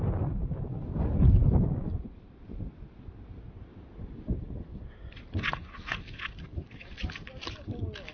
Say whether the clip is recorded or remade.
recorded